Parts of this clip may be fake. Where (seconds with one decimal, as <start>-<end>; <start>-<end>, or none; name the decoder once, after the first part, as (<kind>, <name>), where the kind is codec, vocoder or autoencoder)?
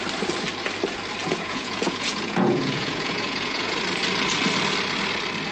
1.2-3.8 (vocoder, Vocos)